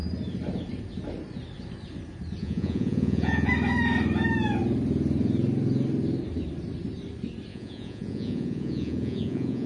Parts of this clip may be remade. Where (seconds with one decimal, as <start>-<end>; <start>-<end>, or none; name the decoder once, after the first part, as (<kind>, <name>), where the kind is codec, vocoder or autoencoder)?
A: 2.4-3.5 (vocoder, Vocos); 7.5-9.7